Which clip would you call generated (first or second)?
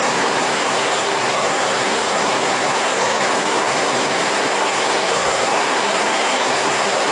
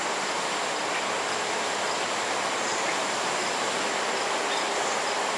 first